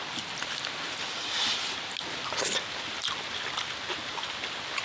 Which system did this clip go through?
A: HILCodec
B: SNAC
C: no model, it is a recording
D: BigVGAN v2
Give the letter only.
D